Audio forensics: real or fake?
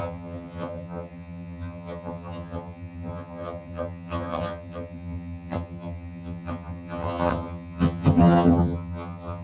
fake